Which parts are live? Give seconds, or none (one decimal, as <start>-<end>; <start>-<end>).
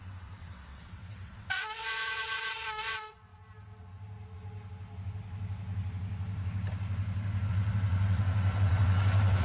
3.3-7.5